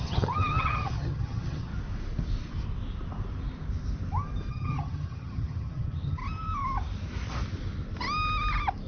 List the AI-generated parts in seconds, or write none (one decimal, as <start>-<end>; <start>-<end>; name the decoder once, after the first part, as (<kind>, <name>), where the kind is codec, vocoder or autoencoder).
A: 0.0-1.7 (vocoder, HiFi-GAN); 4.5-6.2